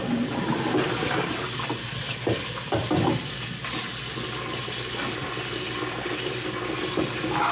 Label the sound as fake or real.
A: real